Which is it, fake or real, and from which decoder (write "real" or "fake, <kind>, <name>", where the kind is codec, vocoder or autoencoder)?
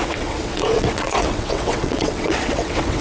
fake, vocoder, WaveNeXt